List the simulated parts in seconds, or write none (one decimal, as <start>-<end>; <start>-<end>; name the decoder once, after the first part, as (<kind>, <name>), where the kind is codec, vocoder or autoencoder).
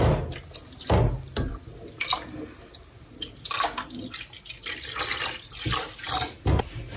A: none